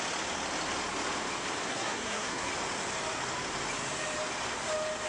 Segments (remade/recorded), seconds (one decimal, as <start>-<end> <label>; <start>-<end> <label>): 0.0-1.7 recorded; 1.7-2.5 remade; 2.5-5.1 recorded

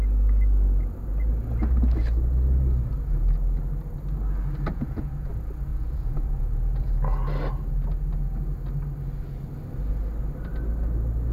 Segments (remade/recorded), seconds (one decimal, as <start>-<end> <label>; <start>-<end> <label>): 0.0-4.7 recorded; 4.7-5.3 remade; 5.3-5.7 recorded; 5.7-6.9 remade; 6.9-11.3 recorded

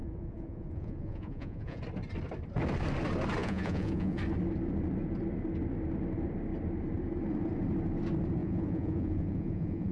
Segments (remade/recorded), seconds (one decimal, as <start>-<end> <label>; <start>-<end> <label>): 0.0-1.8 remade; 1.8-3.4 recorded; 3.4-4.2 remade; 4.2-8.4 recorded; 8.4-9.9 remade

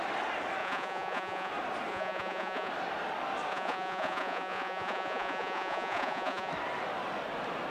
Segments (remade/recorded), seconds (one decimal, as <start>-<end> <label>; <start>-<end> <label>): 0.0-0.6 recorded; 0.6-1.5 remade; 1.5-1.9 recorded; 1.9-2.7 remade; 2.7-3.5 recorded; 3.5-6.5 remade; 6.5-7.7 recorded

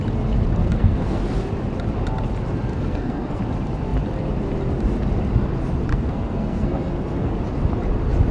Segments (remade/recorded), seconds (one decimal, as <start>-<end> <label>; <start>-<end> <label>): 0.0-0.6 recorded; 0.6-1.2 remade; 1.2-2.7 recorded; 2.7-3.4 remade; 3.4-5.9 recorded; 5.9-7.3 remade; 7.3-8.3 recorded